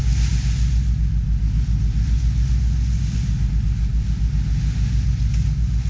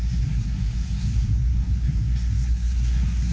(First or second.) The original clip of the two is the first